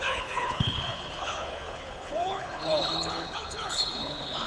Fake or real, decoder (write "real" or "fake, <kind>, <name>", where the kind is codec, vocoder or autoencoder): fake, codec, HILCodec